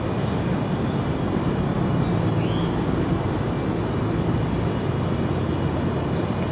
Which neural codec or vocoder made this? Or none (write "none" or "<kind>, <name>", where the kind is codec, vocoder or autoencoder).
none